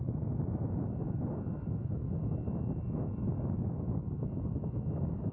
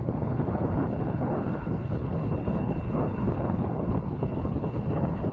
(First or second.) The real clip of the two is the first